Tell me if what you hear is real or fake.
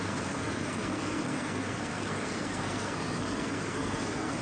fake